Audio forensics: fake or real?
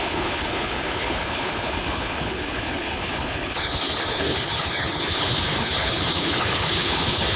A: fake